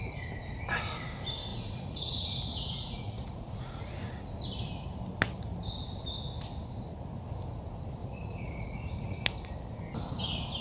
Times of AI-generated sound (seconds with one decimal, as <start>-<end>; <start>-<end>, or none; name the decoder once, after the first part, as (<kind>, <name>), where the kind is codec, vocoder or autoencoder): 1.5-3.8 (vocoder, Vocos); 8.0-8.9